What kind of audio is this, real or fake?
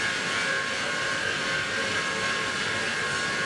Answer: real